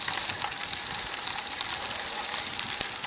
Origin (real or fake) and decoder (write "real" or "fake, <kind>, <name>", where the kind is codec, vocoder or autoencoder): real